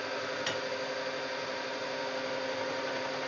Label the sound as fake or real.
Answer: real